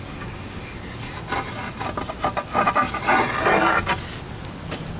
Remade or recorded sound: recorded